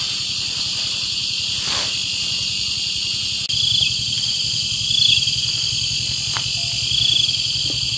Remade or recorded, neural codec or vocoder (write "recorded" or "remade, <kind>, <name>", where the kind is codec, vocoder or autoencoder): recorded